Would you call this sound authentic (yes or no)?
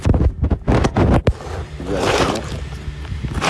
yes